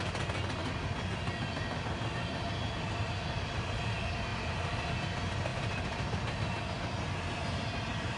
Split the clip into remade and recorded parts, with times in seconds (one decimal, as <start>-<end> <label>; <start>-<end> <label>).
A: 0.0-8.2 recorded